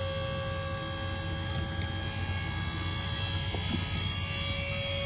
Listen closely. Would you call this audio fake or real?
real